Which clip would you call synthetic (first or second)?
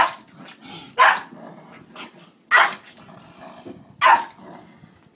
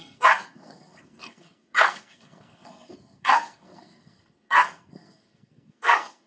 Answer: second